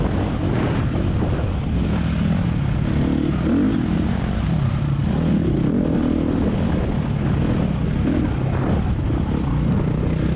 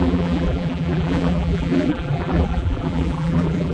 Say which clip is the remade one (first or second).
second